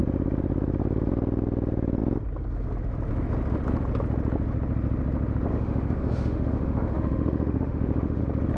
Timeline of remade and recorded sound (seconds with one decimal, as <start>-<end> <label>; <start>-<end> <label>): 0.0-5.5 recorded; 5.5-8.2 remade; 8.2-8.6 recorded